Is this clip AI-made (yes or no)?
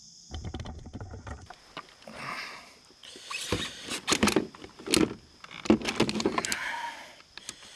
no